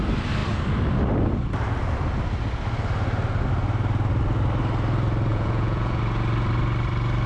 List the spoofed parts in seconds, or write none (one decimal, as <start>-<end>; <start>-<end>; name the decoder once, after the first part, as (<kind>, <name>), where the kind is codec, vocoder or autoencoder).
5.3-6.0 (vocoder, Vocos)